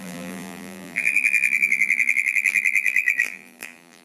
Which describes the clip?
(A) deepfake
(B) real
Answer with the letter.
A